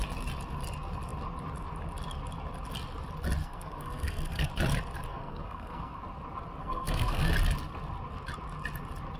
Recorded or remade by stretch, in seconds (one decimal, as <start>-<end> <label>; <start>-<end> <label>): 0.0-3.4 recorded; 3.4-4.5 remade; 4.5-5.1 recorded; 5.1-6.0 remade; 6.0-6.6 recorded; 6.6-7.3 remade; 7.3-9.2 recorded